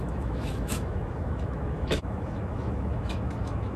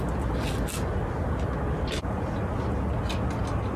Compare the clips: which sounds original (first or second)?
second